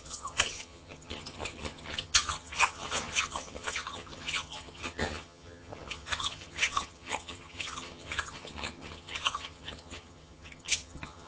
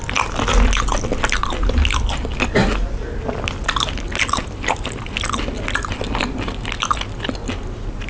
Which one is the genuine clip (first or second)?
second